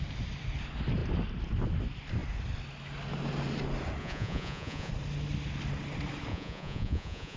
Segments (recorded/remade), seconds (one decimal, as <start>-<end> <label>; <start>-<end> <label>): 0.0-4.0 recorded; 4.0-4.9 remade; 4.9-6.3 recorded; 6.3-7.4 remade

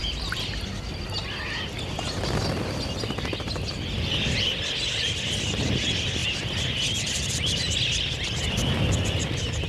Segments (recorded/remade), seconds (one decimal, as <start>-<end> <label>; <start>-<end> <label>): 0.0-9.7 recorded

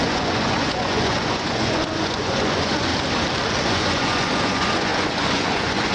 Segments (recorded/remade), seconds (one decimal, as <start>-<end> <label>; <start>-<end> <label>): 0.0-2.9 remade; 2.9-3.7 recorded; 3.7-5.9 remade

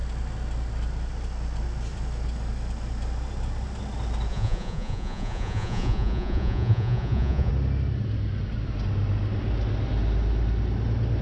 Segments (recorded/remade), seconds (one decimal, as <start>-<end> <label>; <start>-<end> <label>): 0.0-4.3 recorded; 4.3-7.5 remade; 7.5-11.2 recorded